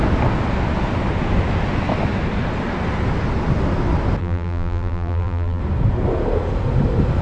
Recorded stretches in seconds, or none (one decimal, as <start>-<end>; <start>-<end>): 0.0-4.2; 5.6-7.2